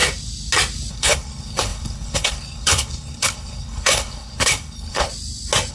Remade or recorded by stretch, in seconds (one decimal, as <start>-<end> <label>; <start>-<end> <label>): 0.0-0.9 recorded; 0.9-5.1 remade; 5.1-5.7 recorded